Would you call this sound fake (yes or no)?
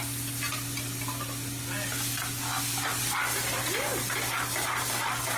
no